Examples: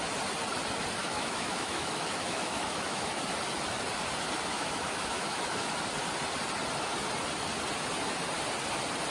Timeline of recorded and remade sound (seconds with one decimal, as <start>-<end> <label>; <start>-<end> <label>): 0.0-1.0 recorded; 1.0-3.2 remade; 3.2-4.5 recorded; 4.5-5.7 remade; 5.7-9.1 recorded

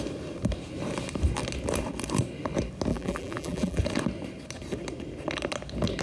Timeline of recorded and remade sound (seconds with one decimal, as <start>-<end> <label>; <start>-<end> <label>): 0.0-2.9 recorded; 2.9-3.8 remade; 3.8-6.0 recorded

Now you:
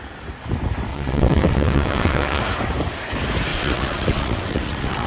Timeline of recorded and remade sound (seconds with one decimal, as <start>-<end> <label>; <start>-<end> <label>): 0.0-0.9 recorded; 0.9-2.4 remade; 2.4-3.5 recorded; 3.5-5.1 remade

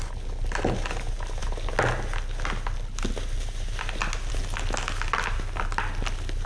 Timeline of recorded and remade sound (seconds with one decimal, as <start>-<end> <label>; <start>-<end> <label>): 0.0-6.5 recorded

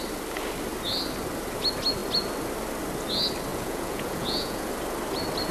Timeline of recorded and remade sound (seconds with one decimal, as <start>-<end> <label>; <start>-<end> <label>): 0.0-3.5 recorded; 3.5-4.7 remade; 4.7-5.5 recorded